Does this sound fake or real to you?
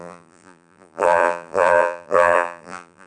fake